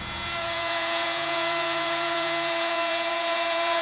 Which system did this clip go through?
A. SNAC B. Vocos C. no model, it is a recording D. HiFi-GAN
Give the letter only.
B